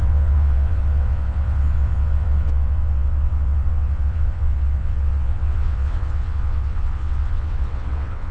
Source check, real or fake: fake